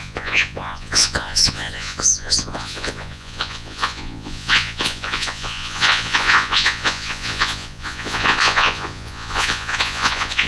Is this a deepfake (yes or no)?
yes